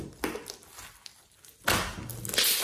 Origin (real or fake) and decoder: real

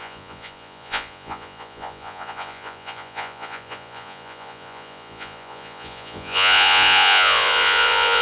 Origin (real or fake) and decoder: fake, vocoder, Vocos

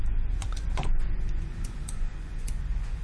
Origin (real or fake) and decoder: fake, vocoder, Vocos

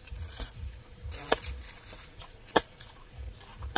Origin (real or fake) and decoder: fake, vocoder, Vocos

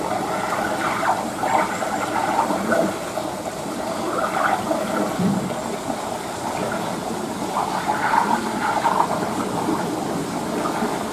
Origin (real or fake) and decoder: real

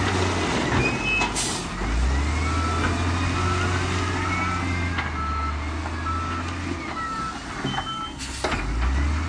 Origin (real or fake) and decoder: real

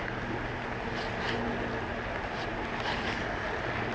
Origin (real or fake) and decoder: real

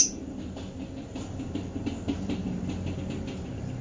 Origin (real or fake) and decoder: real